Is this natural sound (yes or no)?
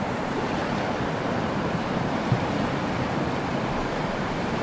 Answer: no